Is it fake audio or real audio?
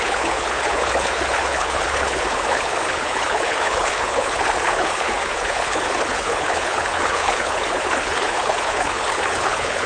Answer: fake